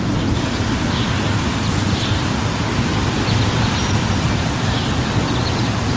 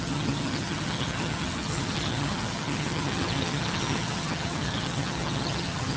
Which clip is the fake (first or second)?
second